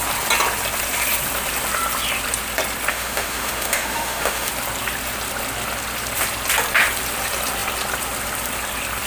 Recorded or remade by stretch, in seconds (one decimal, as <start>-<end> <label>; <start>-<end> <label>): 0.0-2.9 recorded; 2.9-4.5 remade; 4.5-9.1 recorded